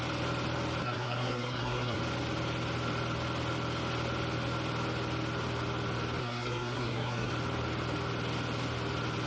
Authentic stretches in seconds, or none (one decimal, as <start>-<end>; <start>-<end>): 0.0-0.8; 2.0-6.2; 7.3-9.3